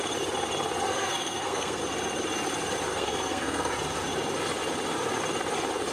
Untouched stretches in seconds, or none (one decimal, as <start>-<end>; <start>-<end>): 0.0-0.9; 1.8-2.9; 3.7-5.9

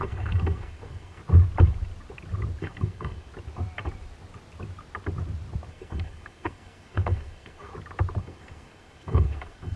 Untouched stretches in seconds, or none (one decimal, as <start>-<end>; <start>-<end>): 1.2-2.6; 3.3-5.7; 7.7-8.2

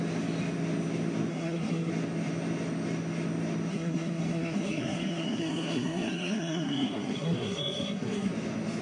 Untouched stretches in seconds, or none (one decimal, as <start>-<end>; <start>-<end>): 0.0-1.3; 1.9-3.7; 8.3-8.8

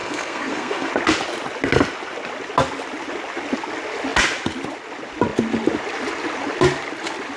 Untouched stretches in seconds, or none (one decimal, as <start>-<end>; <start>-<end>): 0.9-7.4

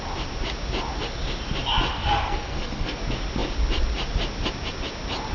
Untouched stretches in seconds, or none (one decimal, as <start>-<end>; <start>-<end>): 0.0-1.9; 3.0-5.3

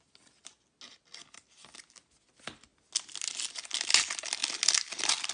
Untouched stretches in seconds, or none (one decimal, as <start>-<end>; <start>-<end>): 0.0-5.3

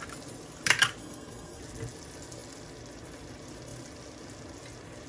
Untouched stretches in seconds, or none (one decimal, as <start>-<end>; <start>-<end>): 0.0-1.0; 1.6-5.1

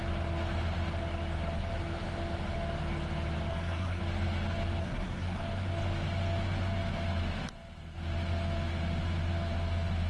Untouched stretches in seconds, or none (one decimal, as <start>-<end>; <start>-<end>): 0.0-3.5; 4.0-4.8; 5.4-10.1